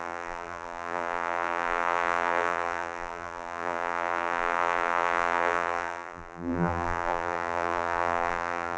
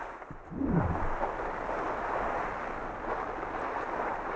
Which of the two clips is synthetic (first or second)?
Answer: first